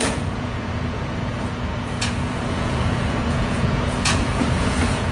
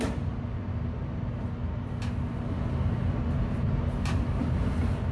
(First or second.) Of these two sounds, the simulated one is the first